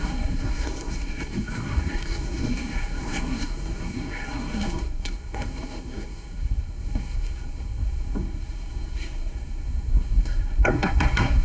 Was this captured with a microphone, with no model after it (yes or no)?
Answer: no